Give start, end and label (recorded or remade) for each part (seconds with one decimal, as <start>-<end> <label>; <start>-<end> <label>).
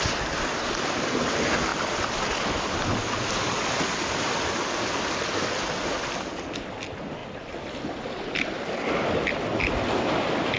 0.0-10.6 recorded